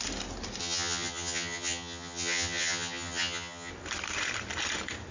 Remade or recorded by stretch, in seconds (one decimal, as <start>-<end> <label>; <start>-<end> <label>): 0.0-0.6 recorded; 0.6-3.7 remade; 3.7-5.1 recorded